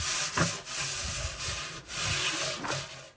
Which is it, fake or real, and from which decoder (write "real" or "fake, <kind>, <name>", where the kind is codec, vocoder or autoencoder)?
real